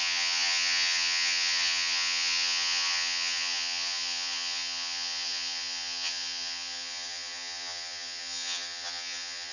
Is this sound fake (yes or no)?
yes